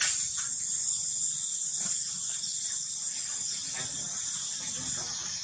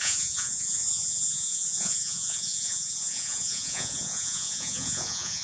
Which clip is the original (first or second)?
first